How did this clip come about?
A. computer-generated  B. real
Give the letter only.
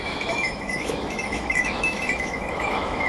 A